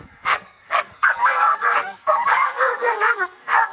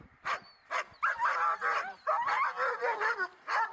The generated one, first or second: first